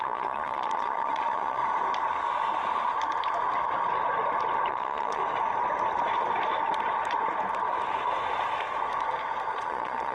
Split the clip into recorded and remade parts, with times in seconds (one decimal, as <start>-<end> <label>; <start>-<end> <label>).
0.0-1.6 remade; 1.6-4.7 recorded; 4.7-5.2 remade; 5.2-9.5 recorded; 9.5-10.1 remade